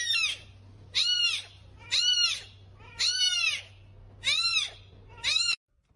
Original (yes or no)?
yes